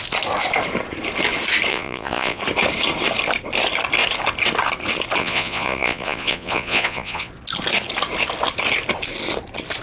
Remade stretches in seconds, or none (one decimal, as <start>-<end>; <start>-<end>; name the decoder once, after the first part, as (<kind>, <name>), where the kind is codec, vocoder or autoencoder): 1.7-2.4 (vocoder, Vocos); 5.2-7.3